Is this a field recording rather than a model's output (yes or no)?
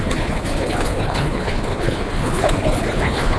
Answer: no